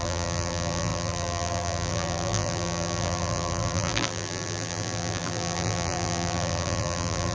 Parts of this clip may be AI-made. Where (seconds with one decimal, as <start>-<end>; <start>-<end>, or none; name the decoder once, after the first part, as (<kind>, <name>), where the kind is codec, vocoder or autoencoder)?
0.0-7.3 (vocoder, BigVGAN v2)